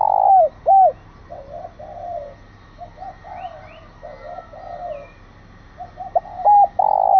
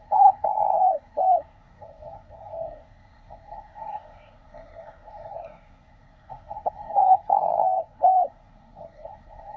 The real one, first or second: first